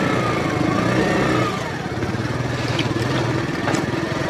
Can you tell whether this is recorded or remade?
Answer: recorded